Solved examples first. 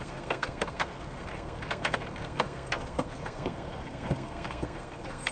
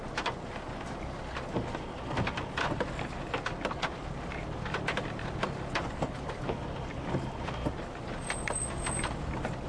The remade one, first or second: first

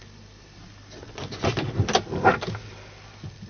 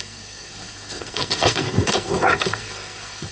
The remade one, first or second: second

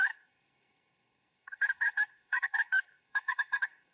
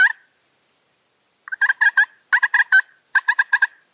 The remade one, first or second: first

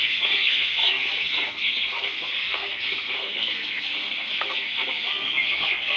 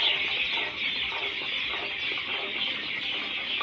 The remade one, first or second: first